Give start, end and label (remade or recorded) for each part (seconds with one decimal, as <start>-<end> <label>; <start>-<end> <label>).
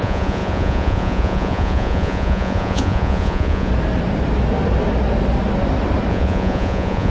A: 0.0-3.7 remade; 3.7-6.1 recorded; 6.1-7.1 remade